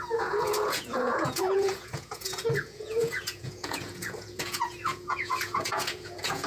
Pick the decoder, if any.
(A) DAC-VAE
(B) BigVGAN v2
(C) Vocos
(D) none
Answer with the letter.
C